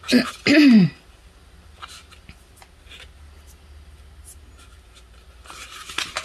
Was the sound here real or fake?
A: real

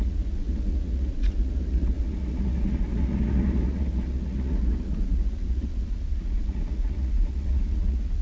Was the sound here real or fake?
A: fake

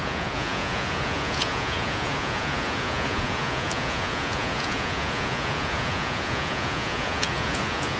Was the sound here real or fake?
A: fake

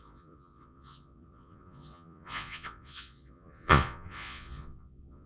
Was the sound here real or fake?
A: fake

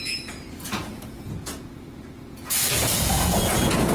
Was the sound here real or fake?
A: fake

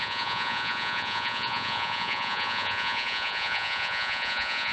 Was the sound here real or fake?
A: fake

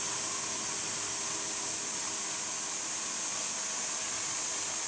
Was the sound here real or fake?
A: real